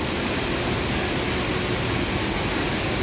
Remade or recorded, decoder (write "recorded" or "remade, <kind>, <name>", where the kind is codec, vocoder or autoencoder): recorded